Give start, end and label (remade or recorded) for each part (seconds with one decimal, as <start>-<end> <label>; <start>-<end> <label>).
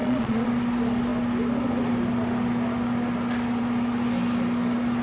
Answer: 0.0-0.5 remade; 0.5-5.0 recorded